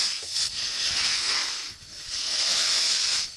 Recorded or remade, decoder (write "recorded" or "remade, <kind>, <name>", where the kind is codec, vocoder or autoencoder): remade, codec, SNAC